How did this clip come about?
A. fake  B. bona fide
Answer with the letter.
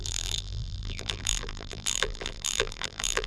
A